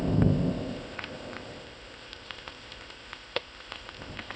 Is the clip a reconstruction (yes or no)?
yes